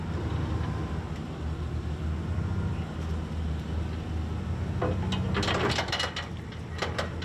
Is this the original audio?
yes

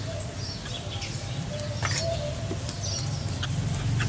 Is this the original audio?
yes